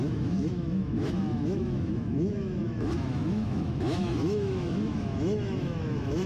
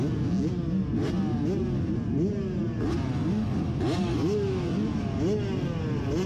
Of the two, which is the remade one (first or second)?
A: first